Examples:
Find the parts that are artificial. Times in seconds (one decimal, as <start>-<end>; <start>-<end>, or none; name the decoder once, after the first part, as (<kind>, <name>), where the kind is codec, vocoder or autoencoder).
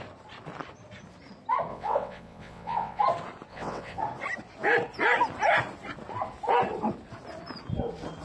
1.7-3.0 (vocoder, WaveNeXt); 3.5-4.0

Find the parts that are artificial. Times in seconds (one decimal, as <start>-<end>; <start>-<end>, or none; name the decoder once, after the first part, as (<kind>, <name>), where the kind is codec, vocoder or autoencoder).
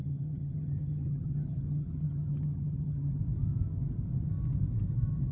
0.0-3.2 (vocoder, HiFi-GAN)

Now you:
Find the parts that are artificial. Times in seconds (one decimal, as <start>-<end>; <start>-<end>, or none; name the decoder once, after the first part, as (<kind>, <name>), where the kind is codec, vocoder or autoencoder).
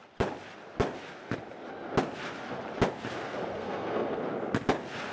3.5-4.2 (codec, SNAC)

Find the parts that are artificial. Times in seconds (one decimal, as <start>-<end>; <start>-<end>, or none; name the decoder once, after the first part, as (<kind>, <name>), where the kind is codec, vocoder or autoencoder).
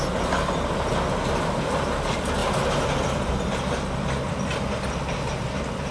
none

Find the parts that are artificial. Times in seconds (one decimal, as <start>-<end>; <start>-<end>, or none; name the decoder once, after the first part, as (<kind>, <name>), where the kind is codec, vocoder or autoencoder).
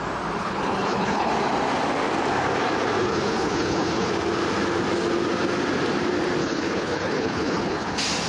0.4-1.3 (codec, HILCodec); 3.0-4.1; 6.4-7.9